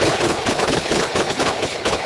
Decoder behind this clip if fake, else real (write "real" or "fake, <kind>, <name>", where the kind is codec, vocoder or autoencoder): fake, codec, HILCodec